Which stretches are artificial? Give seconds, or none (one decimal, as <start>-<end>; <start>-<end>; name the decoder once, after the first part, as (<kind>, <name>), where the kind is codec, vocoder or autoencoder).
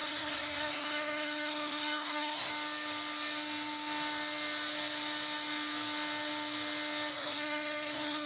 0.0-2.5 (codec, SNAC); 7.1-8.3